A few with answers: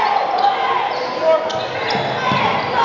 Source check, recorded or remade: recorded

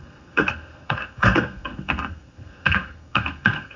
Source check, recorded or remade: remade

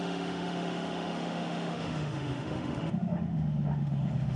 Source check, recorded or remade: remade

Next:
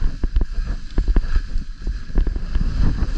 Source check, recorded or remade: remade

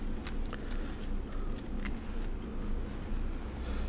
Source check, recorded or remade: recorded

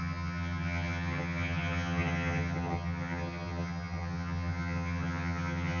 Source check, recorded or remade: remade